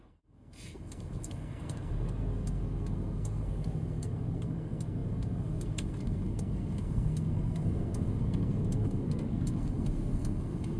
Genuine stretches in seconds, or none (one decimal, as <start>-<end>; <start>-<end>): none